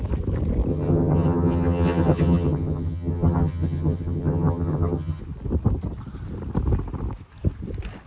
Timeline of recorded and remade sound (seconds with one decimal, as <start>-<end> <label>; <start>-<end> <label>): 0.0-0.7 recorded; 0.7-5.2 remade; 5.2-8.1 recorded